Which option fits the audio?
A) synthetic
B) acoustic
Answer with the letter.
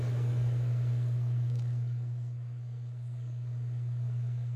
A